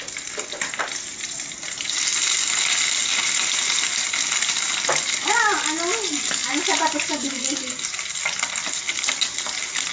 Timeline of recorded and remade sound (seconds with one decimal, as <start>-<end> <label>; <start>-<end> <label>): 0.0-6.4 recorded; 6.4-7.3 remade; 7.3-9.9 recorded

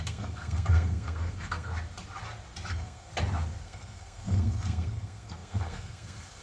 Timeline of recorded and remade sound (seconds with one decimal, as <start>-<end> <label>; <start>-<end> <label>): 0.0-1.7 remade; 1.7-2.7 recorded; 2.7-3.1 remade; 3.1-3.6 recorded; 3.6-6.4 remade